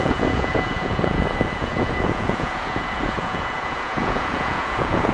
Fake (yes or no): yes